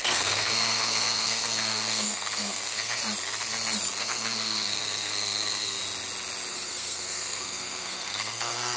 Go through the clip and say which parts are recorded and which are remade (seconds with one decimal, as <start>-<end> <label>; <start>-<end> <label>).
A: 0.0-3.0 remade; 3.0-4.0 recorded; 4.0-5.8 remade; 5.8-6.5 recorded; 6.5-8.8 remade